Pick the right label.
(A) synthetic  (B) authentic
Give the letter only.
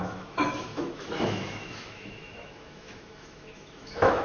A